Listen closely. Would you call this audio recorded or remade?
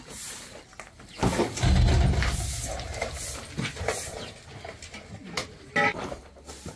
recorded